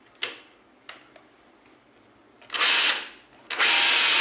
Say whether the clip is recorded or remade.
recorded